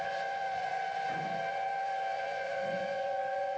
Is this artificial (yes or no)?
yes